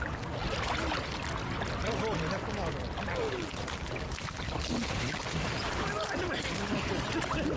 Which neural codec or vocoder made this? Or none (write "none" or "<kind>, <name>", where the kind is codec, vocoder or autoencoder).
none